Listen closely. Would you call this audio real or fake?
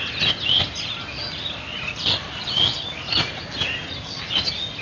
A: real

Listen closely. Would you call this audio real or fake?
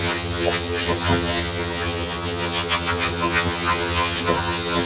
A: fake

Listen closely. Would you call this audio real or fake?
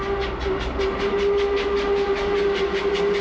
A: real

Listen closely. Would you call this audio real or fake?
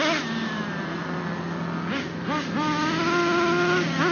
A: real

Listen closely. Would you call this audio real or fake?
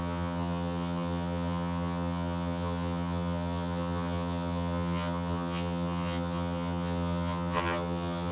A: fake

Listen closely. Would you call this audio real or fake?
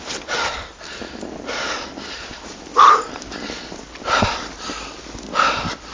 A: real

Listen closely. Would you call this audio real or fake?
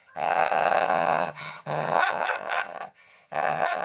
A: fake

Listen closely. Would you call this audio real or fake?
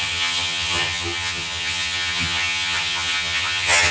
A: fake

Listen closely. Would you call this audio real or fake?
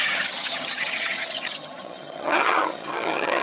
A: fake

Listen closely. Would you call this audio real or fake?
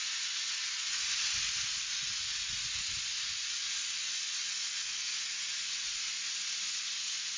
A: real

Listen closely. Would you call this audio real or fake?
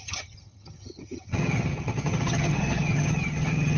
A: fake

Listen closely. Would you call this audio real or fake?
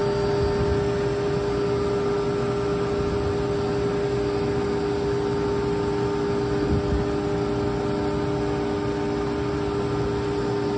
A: real